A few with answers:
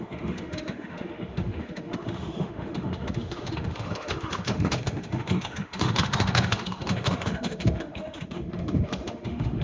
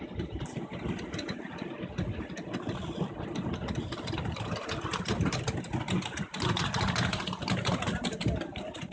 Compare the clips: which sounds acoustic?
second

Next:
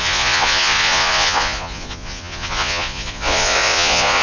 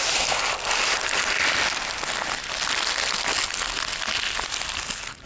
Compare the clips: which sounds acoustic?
second